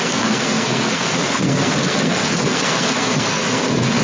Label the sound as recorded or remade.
remade